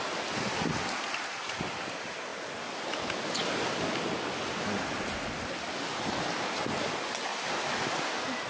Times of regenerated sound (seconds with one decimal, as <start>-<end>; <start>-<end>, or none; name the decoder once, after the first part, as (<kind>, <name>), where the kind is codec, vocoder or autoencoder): 0.0-2.3 (vocoder, BigVGAN v2); 3.9-7.3; 7.9-8.5